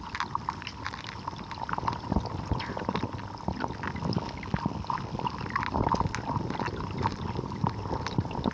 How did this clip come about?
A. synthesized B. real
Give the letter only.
B